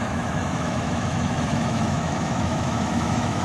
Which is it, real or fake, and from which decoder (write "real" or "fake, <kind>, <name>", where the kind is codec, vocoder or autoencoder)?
fake, autoencoder, DAC-VAE